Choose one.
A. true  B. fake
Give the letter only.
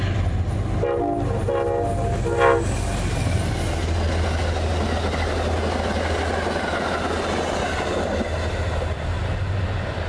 A